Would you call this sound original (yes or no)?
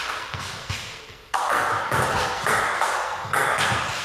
no